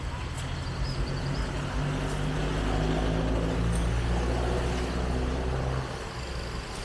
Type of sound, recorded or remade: recorded